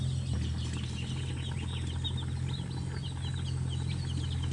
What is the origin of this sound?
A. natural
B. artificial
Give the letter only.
A